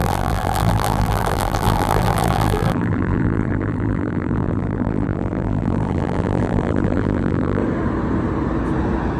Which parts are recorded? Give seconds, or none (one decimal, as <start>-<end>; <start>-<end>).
7.6-9.2